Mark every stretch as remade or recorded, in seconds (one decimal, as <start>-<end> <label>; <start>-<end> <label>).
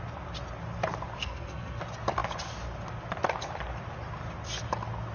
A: 0.0-1.2 recorded; 1.2-1.8 remade; 1.8-5.1 recorded